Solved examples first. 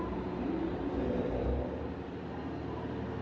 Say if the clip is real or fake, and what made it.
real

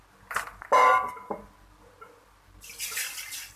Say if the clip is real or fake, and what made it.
real